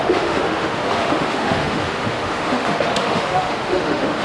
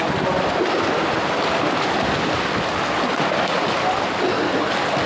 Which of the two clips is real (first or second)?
second